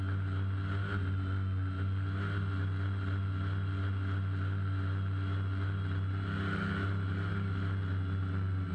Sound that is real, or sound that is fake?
real